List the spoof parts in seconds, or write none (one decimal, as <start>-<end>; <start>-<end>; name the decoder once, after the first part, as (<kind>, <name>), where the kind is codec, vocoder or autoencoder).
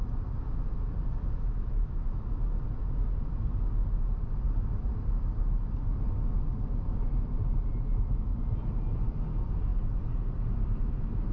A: none